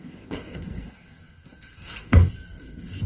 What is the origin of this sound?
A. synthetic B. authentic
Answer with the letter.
A